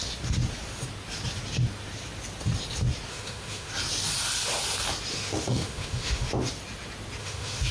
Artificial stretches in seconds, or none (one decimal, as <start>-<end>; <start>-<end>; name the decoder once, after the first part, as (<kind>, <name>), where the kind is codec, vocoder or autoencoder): 3.1-3.7 (autoencoder, DAC-VAE); 5.1-6.3; 7.2-7.7